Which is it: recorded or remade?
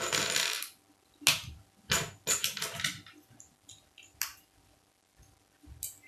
recorded